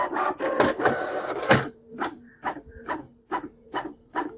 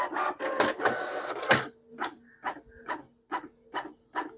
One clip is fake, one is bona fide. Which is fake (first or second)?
first